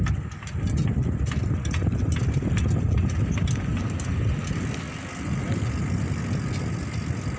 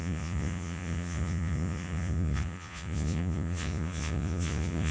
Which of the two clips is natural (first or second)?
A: first